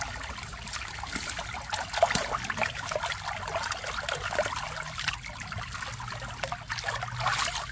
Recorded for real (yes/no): yes